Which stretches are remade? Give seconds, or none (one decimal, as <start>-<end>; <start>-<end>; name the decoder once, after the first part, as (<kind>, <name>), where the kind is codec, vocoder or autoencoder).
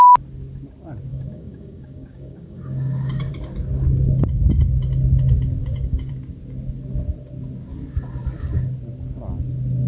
1.1-3.3 (codec, DAC); 5.6-6.1